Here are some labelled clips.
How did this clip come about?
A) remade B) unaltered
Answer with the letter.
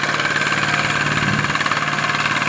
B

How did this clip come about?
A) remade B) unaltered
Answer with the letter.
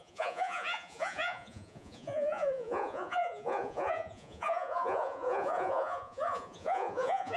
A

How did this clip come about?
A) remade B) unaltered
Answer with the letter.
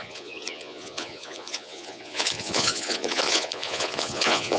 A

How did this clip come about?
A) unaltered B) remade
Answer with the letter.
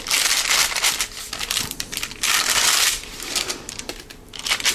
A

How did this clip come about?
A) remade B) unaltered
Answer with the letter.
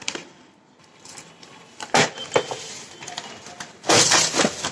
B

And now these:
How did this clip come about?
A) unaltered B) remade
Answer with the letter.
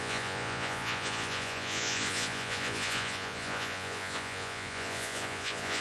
B